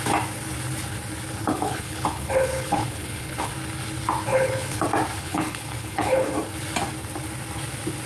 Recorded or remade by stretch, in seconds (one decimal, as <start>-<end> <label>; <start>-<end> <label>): 0.0-1.4 recorded; 1.4-3.5 remade; 3.5-4.3 recorded; 4.3-4.8 remade; 4.8-5.2 recorded; 5.2-6.3 remade; 6.3-8.1 recorded